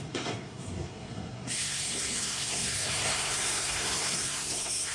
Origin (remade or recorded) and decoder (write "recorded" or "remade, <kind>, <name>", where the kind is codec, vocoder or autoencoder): remade, codec, SNAC